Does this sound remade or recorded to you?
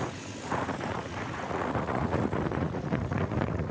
remade